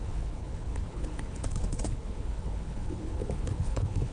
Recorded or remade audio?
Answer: remade